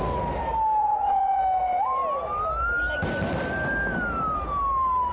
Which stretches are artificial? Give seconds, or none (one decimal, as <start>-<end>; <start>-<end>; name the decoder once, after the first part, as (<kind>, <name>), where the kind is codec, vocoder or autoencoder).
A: 0.8-1.4 (vocoder, WaveNeXt)